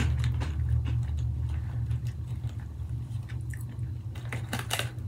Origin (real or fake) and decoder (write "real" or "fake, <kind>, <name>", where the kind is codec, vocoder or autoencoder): real